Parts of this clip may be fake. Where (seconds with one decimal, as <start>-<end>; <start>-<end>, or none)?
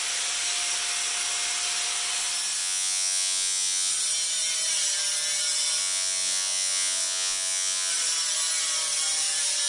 2.6-3.9; 5.8-7.9